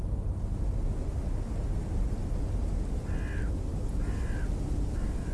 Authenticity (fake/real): real